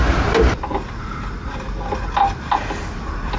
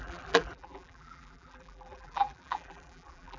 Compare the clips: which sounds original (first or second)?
first